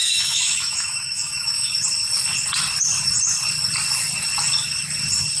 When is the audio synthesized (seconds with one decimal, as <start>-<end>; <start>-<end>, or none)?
0.0-1.7